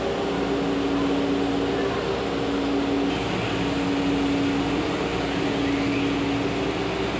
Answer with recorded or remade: recorded